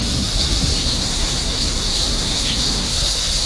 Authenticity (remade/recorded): remade